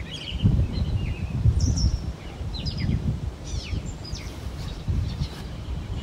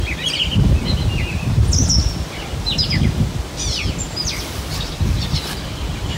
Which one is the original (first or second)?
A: second